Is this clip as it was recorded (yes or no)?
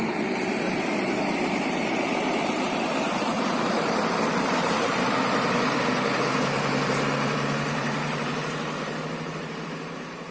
no